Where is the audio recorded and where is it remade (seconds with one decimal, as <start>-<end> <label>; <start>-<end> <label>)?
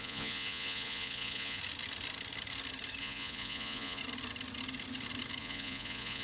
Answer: 0.0-1.6 remade; 1.6-3.0 recorded; 3.0-4.0 remade; 4.0-5.4 recorded; 5.4-6.2 remade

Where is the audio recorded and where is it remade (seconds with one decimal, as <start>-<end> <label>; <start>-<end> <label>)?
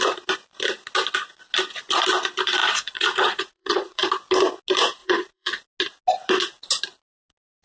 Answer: 0.0-2.6 recorded; 2.6-4.1 remade; 4.1-5.0 recorded; 5.0-5.6 remade; 5.6-7.6 recorded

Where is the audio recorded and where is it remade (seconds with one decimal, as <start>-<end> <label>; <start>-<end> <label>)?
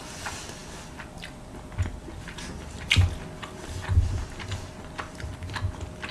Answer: 0.0-6.1 recorded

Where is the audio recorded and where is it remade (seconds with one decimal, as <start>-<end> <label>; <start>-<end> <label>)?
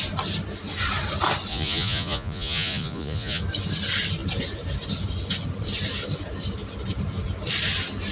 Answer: 0.0-1.5 recorded; 1.5-3.4 remade; 3.4-8.1 recorded